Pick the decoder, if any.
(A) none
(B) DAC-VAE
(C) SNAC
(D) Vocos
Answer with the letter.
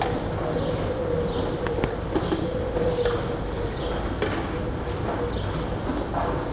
A